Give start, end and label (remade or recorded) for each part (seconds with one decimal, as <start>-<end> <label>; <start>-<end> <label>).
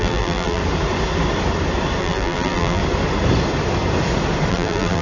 0.0-0.6 remade; 0.6-2.0 recorded; 2.0-2.8 remade; 2.8-4.5 recorded; 4.5-5.0 remade